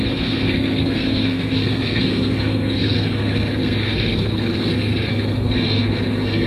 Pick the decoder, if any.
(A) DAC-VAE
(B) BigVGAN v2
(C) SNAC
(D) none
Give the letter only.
C